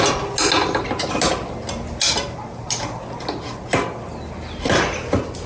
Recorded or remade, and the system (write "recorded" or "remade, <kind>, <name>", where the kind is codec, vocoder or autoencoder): recorded